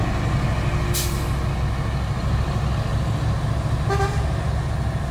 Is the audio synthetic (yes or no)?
no